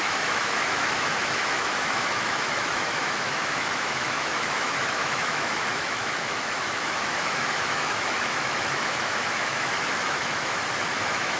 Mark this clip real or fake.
fake